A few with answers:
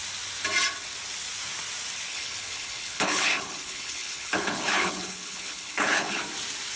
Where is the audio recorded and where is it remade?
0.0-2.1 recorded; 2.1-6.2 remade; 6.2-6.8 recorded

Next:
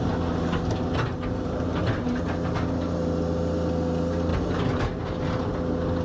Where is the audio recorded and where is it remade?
0.0-1.1 recorded; 1.1-2.0 remade; 2.0-6.0 recorded